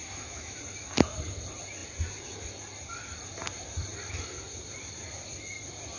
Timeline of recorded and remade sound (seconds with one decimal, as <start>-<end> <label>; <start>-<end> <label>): 0.0-0.6 remade; 0.6-6.0 recorded